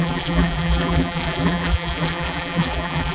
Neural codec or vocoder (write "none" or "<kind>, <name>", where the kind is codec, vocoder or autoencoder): vocoder, BigVGAN v2